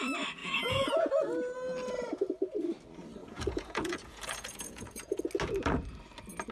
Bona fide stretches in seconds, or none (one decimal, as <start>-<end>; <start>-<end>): 0.0-0.4; 1.1-3.2; 5.2-6.5